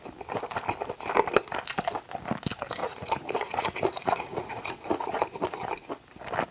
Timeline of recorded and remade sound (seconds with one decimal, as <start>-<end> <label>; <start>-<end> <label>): 0.0-2.8 recorded; 2.8-5.7 remade; 5.7-6.5 recorded